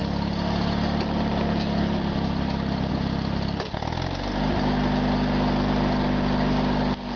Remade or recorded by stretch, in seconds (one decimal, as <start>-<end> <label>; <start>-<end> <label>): 0.0-2.9 remade; 2.9-7.2 recorded